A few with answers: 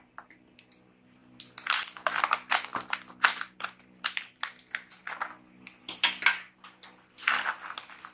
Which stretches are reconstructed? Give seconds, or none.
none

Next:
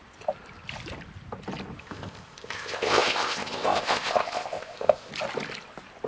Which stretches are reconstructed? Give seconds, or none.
1.8-5.1 (codec, ZipCodec)

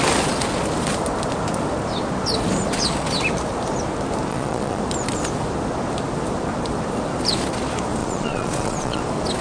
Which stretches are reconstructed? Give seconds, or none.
4.3-4.8 (vocoder, Vocos); 8.0-9.0

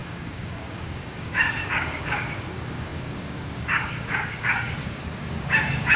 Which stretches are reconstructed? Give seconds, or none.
0.0-6.0 (codec, DAC)

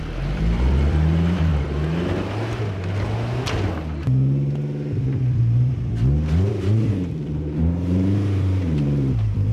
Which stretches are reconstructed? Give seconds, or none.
0.0-1.5 (vocoder, BigVGAN v2); 5.4-5.9; 6.5-9.5

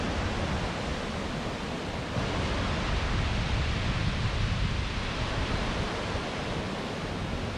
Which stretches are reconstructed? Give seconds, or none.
none

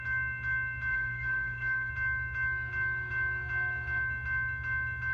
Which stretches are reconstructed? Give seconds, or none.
0.9-1.9 (autoencoder, DAC-VAE)

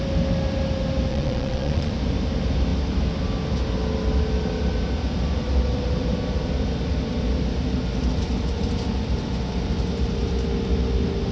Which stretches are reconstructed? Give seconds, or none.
1.1-1.9 (vocoder, Vocos)